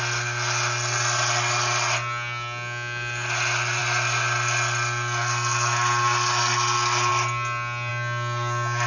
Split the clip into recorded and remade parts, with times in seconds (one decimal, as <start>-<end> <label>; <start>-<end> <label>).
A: 0.0-8.9 recorded